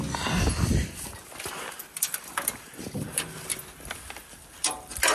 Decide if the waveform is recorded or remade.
recorded